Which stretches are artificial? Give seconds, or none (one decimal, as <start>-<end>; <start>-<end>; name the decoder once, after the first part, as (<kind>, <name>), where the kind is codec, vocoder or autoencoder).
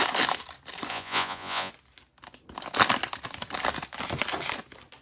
0.9-1.7 (vocoder, Vocos)